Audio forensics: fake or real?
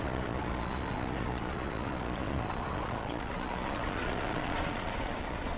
fake